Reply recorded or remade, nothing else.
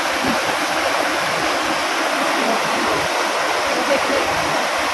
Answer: recorded